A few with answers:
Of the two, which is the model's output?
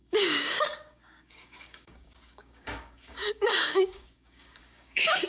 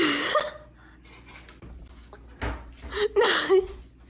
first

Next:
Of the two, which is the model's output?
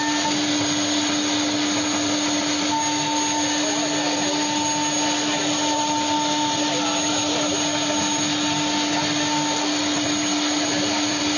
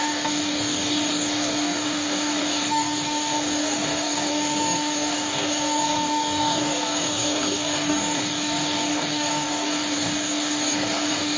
second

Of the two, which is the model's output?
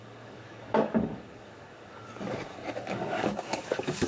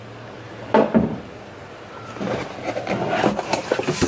first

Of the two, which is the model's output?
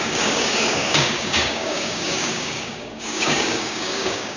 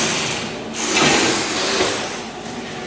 first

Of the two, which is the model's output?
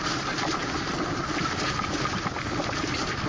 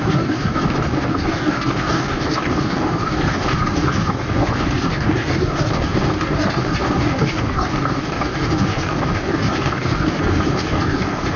second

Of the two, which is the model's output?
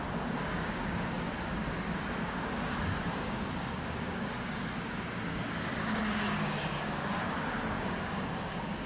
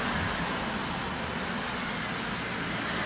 first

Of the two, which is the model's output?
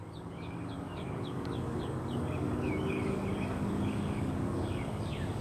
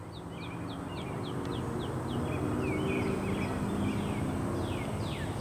first